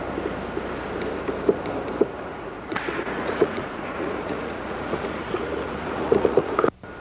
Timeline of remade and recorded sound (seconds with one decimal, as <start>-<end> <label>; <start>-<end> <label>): 0.0-2.3 recorded; 2.3-6.5 remade; 6.5-7.0 recorded